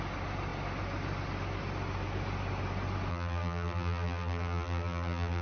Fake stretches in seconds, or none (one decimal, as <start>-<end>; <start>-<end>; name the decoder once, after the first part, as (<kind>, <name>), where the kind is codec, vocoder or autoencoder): 3.1-5.4 (vocoder, BigVGAN v2)